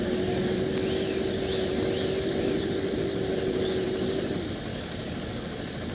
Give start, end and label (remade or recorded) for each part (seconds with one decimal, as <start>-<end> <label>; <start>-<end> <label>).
0.0-4.7 recorded; 4.7-5.5 remade; 5.5-5.9 recorded